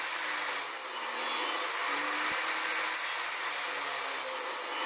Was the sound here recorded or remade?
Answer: recorded